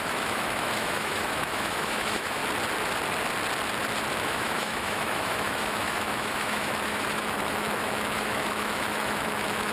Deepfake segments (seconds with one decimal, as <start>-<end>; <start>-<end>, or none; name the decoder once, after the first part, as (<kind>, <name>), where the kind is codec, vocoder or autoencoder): 0.0-2.4 (autoencoder, DAC-VAE); 4.2-9.7